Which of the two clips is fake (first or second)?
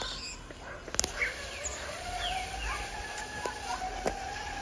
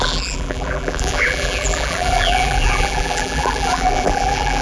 second